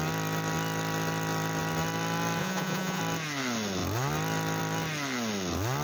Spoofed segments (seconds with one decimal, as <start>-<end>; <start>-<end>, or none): 2.4-3.0